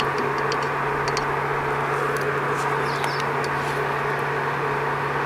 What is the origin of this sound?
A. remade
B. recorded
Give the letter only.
B